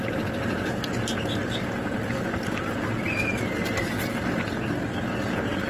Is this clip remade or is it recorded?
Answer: recorded